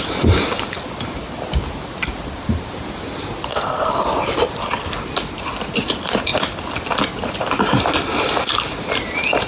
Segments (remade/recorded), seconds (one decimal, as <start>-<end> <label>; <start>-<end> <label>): 0.0-3.5 recorded; 3.5-4.0 remade; 4.0-9.5 recorded